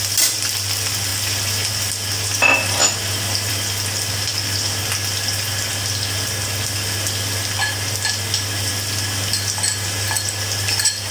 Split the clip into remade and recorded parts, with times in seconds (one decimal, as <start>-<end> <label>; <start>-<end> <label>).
0.0-11.1 recorded